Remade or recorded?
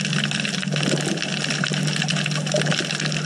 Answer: recorded